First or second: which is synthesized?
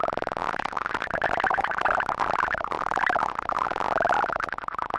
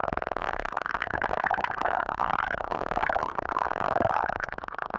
second